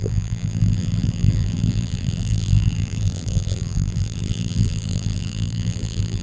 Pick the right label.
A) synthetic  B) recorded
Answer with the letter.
A